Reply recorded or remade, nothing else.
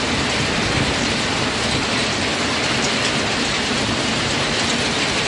recorded